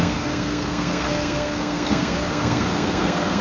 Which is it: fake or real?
fake